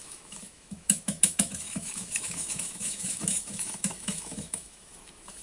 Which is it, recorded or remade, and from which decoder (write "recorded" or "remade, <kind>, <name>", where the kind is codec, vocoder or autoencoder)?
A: remade, autoencoder, DAC-VAE